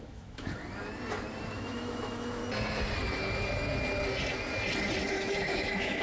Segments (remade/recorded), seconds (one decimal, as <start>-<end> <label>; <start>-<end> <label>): 0.0-0.5 remade; 0.5-1.5 recorded; 1.5-2.4 remade; 2.4-5.1 recorded; 5.1-6.0 remade